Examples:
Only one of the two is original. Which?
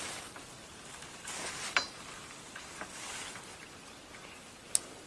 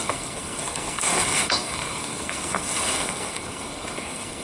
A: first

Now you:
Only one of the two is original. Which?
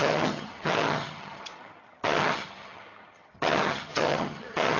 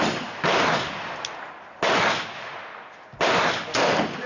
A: second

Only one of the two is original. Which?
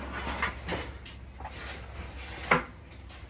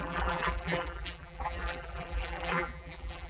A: first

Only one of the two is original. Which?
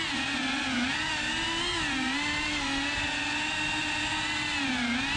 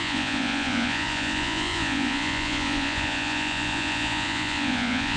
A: first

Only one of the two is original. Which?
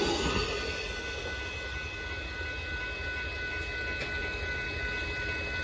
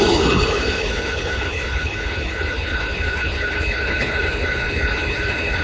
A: first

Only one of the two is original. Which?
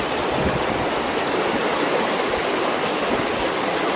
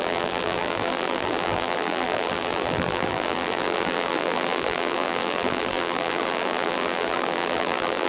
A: first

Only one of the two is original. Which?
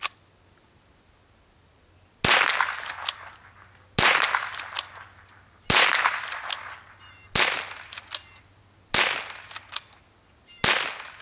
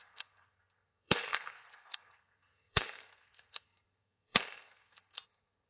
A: first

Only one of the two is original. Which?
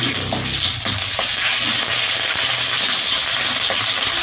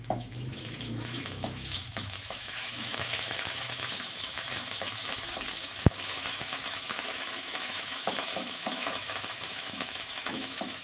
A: first